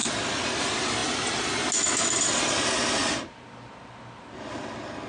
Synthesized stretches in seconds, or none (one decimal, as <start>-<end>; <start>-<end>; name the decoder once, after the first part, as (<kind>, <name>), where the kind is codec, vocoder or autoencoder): none